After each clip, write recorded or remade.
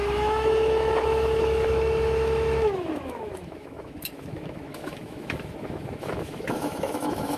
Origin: remade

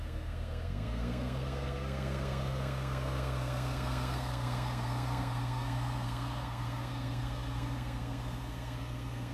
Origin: remade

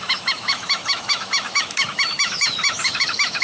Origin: remade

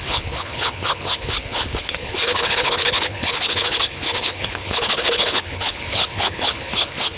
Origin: remade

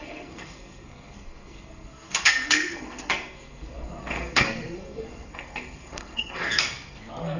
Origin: remade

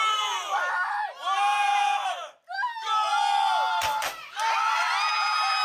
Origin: recorded